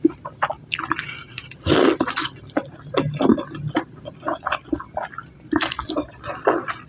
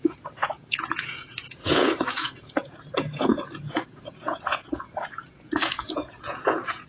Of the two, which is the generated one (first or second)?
second